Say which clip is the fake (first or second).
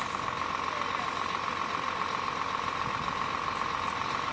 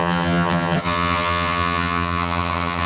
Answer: second